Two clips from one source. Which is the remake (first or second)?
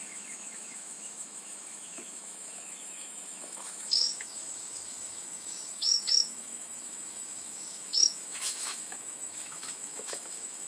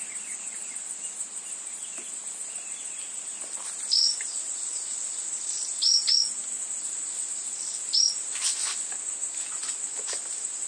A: first